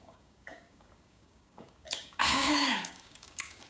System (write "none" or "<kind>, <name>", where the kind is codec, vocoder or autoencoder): codec, DAC